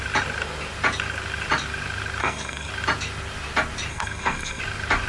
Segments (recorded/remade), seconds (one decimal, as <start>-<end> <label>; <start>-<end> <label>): 0.0-2.2 recorded; 2.2-2.7 remade; 2.7-3.9 recorded; 3.9-4.6 remade; 4.6-5.1 recorded